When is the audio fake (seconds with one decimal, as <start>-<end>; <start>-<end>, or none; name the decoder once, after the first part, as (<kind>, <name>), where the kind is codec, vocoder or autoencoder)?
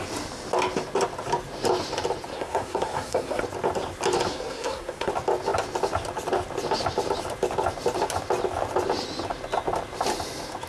2.3-3.4 (codec, SNAC); 4.3-5.1